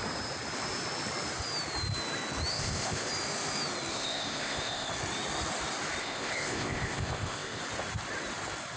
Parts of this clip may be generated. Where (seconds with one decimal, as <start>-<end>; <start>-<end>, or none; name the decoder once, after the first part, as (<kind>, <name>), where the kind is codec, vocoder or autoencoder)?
2.5-3.1 (codec, ZipCodec); 3.9-4.9; 6.0-7.6